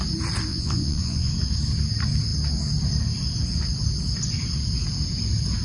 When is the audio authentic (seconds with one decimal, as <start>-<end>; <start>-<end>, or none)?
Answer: 0.0-0.5; 1.3-5.6